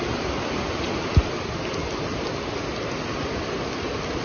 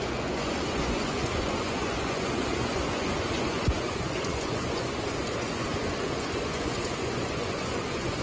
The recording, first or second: first